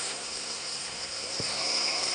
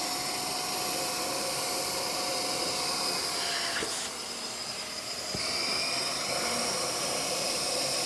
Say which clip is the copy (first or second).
first